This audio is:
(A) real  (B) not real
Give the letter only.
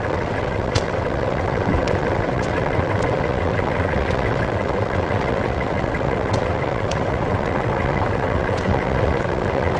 B